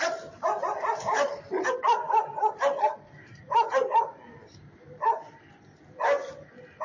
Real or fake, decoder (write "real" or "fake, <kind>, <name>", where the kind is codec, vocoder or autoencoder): real